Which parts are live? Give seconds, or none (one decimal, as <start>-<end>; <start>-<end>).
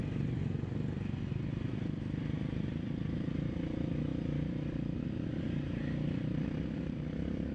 0.0-7.5